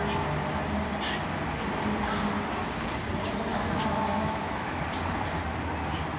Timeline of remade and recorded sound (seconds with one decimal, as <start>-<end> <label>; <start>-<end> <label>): 0.0-3.5 recorded; 3.5-4.8 remade; 4.8-6.2 recorded